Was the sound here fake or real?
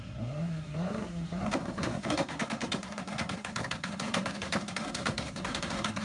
fake